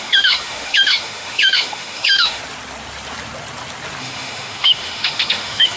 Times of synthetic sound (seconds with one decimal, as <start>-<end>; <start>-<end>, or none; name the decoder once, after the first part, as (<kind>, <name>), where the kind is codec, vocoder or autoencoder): 0.0-2.4 (autoencoder, DAC-VAE); 4.0-5.8